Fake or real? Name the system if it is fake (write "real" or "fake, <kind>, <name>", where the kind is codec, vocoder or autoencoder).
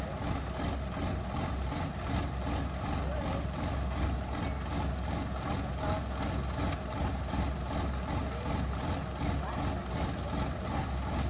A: real